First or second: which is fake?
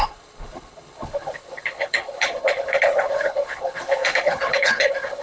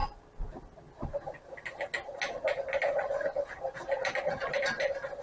first